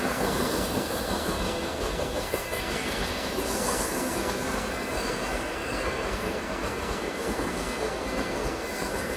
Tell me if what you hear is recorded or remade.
remade